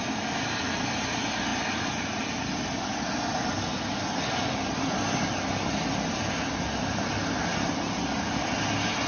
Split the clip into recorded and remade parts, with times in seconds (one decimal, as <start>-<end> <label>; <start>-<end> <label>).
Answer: 0.0-9.1 recorded